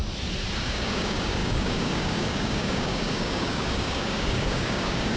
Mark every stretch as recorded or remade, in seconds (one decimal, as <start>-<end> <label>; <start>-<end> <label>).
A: 0.0-0.6 recorded; 0.6-5.2 remade